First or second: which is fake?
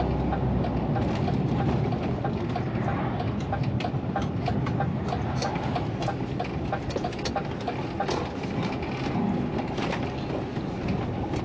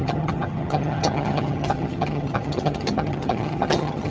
second